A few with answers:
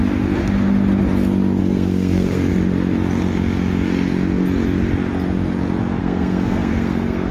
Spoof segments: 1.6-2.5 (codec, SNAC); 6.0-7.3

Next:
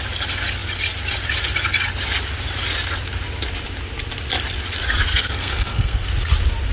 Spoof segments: 5.1-6.1 (codec, SNAC)

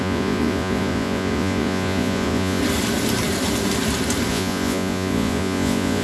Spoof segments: 0.0-2.6 (vocoder, Vocos); 4.3-6.0

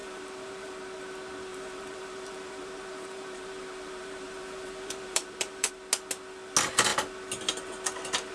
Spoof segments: 0.0-0.7 (vocoder, BigVGAN v2); 1.5-5.7